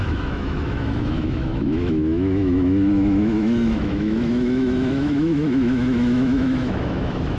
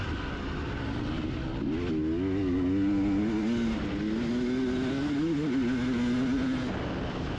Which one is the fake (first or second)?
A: first